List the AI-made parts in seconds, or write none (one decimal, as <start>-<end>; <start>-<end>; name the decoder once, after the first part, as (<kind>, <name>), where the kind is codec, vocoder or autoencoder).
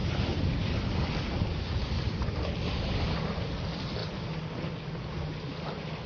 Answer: none